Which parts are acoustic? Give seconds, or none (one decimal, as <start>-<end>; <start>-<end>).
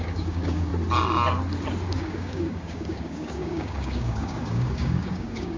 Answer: 0.7-2.0